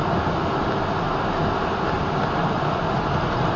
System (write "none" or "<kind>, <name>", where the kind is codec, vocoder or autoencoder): none